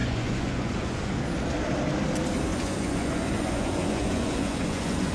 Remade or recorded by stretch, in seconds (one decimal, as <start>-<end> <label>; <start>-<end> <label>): 0.0-1.2 remade; 1.2-2.5 recorded; 2.5-5.1 remade